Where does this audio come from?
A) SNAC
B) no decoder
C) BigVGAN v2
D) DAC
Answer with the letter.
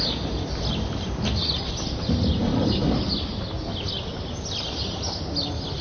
B